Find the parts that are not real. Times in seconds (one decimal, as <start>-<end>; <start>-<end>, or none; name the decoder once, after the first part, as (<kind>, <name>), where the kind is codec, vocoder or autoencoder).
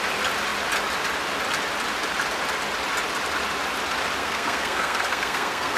4.2-5.8 (codec, SNAC)